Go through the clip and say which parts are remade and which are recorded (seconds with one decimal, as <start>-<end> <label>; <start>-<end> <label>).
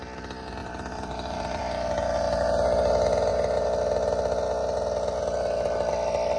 0.0-0.6 recorded; 0.6-1.6 remade; 1.6-6.4 recorded